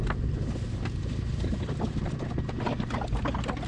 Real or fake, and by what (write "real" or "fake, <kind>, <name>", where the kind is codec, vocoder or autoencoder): real